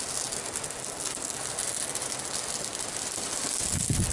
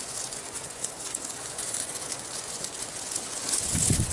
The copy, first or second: second